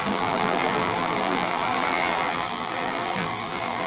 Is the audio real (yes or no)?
no